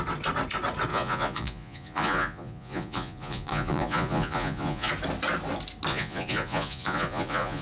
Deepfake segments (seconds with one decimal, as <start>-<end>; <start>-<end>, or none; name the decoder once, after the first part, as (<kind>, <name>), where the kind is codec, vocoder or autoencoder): 0.9-4.9 (vocoder, Vocos); 5.9-7.6